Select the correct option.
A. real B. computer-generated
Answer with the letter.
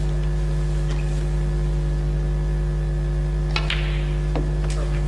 A